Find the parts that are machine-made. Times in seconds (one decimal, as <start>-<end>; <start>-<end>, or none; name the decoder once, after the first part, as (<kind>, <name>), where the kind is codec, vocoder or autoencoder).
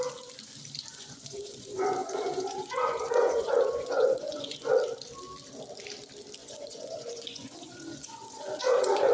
0.9-4.7 (vocoder, Vocos); 6.4-9.1